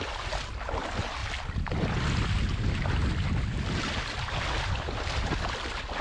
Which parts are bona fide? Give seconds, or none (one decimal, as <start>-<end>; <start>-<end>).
0.0-6.0